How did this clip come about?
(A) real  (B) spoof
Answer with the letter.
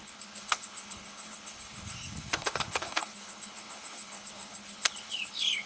B